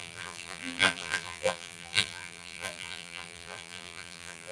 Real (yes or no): no